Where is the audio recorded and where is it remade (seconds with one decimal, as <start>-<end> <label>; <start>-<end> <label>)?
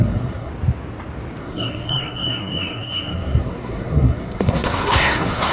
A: 0.0-0.5 remade; 0.5-1.4 recorded; 1.4-5.5 remade